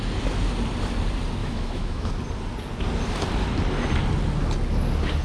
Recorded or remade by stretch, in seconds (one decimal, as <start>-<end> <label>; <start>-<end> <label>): 0.0-1.4 recorded; 1.4-2.1 remade; 2.1-5.2 recorded